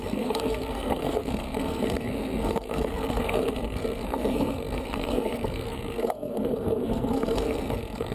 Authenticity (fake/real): fake